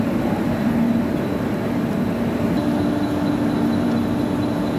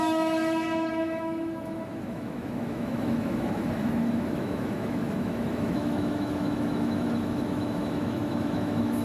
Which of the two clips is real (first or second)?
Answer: first